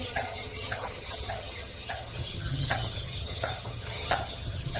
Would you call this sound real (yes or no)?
no